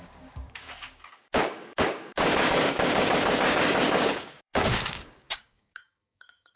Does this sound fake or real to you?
fake